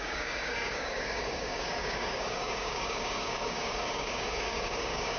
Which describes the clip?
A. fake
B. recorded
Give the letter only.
A